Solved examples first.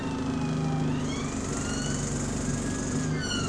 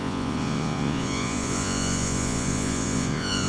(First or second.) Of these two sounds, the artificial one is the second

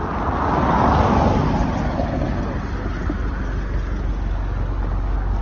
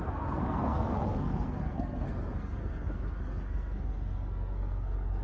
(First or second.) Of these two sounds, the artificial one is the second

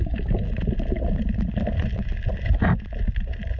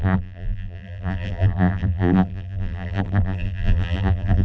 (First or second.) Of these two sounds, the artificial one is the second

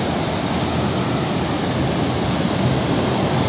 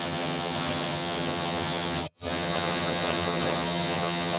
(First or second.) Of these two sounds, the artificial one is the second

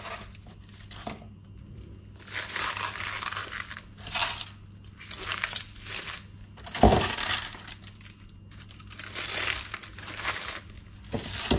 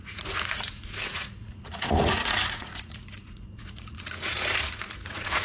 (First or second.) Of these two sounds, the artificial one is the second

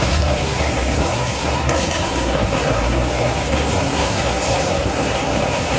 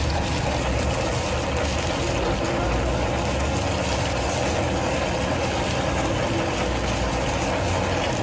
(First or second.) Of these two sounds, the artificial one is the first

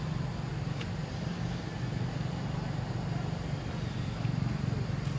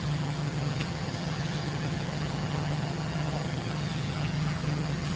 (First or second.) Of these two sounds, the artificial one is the second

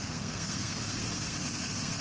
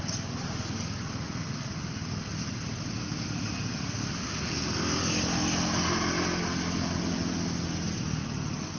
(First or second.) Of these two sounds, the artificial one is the first